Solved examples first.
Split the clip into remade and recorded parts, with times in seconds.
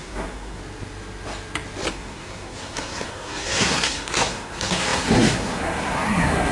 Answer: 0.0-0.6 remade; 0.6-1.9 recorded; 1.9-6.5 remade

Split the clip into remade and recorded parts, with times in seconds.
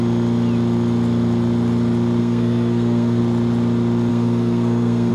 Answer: 0.0-2.2 recorded; 2.2-3.2 remade; 3.2-4.1 recorded; 4.1-5.1 remade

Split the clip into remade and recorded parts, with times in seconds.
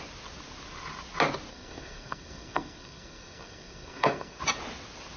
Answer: 0.0-1.5 recorded; 1.5-4.4 remade; 4.4-5.2 recorded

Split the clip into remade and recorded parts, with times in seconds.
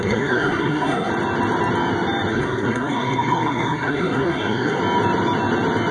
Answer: 0.0-1.1 remade; 1.1-2.3 recorded; 2.3-4.8 remade; 4.8-5.9 recorded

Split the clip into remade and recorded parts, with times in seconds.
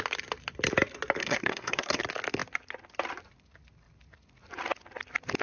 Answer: 0.0-1.2 recorded; 1.2-2.0 remade; 2.0-5.4 recorded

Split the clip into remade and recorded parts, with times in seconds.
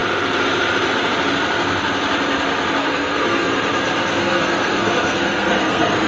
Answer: 0.0-2.8 recorded; 2.8-3.5 remade; 3.5-4.2 recorded; 4.2-6.1 remade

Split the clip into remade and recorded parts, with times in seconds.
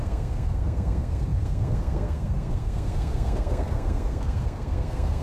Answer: 0.0-5.2 remade